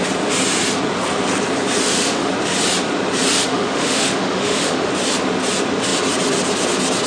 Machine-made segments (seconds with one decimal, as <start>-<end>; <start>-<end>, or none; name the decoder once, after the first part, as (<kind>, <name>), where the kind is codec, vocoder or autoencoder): 1.8-2.3 (autoencoder, DAC-VAE); 3.5-4.9

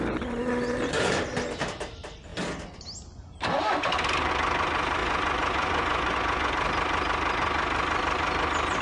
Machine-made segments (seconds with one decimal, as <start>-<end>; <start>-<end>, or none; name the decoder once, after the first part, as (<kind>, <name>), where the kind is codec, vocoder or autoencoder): 5.0-6.5 (vocoder, Vocos)

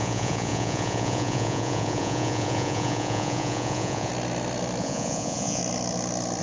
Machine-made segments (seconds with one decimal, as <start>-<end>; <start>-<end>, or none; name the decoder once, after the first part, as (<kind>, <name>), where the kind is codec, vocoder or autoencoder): 0.0-4.1 (vocoder, Vocos); 4.8-5.6

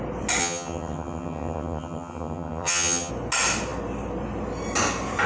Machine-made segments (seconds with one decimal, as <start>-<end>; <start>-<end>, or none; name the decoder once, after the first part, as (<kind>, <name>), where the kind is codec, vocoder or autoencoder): 0.4-3.1 (vocoder, HiFi-GAN)

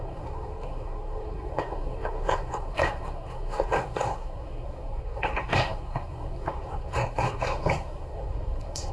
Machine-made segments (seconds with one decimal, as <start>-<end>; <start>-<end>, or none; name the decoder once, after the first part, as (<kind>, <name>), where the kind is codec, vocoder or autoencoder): 0.0-8.9 (codec, SNAC)

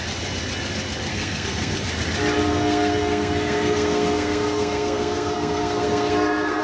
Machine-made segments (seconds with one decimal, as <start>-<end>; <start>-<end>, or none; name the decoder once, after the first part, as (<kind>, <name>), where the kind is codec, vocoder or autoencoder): 1.1-1.9 (codec, SNAC); 2.5-6.6

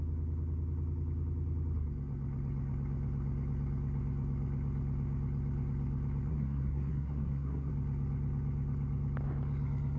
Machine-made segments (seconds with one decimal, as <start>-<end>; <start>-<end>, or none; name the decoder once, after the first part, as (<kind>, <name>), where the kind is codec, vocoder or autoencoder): 6.3-7.7 (codec, SNAC)